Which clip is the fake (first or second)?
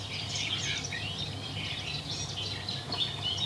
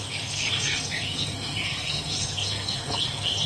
second